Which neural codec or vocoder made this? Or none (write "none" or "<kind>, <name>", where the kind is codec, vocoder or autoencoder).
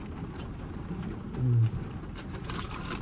vocoder, BigVGAN v2